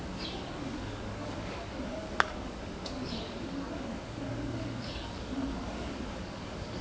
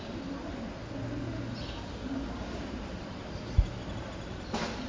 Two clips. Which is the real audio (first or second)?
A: second